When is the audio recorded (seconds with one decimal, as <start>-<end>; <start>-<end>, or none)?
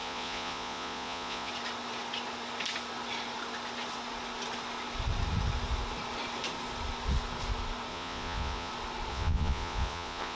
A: 1.5-7.9; 8.7-9.1